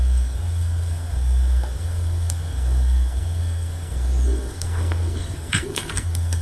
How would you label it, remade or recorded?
remade